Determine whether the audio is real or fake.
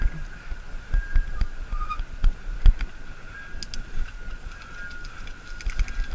real